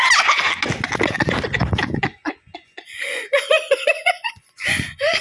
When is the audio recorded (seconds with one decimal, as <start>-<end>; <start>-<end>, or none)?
0.0-2.1